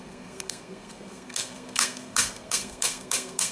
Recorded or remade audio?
remade